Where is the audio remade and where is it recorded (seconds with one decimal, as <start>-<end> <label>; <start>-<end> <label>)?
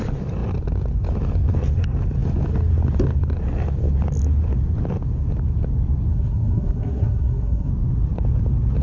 0.0-6.1 recorded; 6.1-7.7 remade; 7.7-8.8 recorded